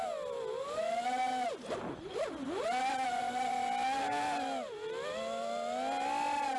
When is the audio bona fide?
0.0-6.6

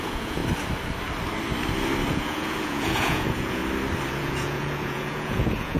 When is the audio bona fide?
0.4-2.1; 3.6-4.1